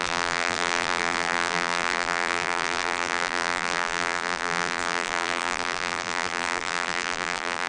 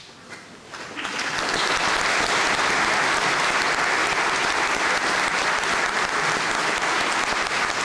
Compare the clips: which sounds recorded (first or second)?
second